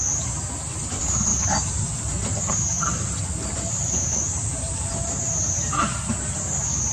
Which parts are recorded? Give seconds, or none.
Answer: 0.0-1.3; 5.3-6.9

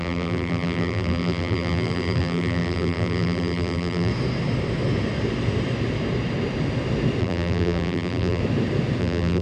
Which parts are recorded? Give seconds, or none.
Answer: 4.1-7.2; 8.4-9.0

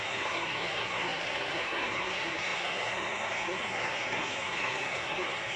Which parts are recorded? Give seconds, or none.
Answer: none

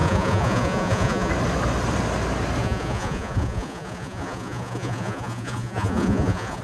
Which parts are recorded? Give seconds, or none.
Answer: 1.3-2.6